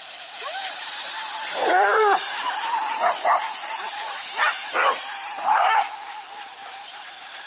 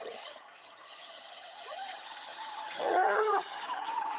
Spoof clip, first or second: second